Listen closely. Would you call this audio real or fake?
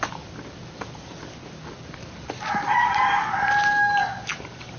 real